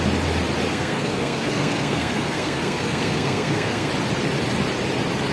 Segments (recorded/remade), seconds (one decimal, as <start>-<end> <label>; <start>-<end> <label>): 0.0-0.7 recorded; 0.7-3.9 remade; 3.9-5.3 recorded